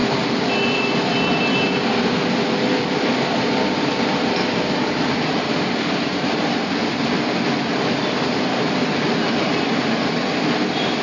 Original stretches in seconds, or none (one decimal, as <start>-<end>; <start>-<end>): none